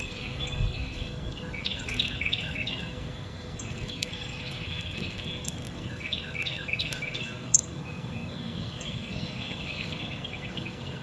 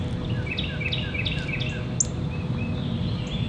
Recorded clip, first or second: second